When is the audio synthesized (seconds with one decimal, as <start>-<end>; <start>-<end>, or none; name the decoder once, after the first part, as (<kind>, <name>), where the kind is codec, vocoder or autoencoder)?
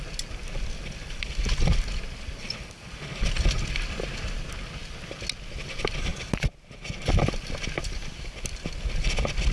none